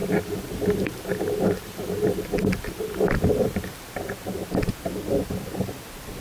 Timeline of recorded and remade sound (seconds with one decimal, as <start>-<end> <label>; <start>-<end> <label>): 0.0-3.7 remade; 3.7-6.2 recorded